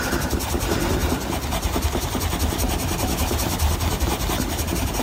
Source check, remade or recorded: recorded